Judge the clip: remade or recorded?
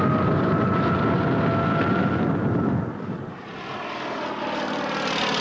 recorded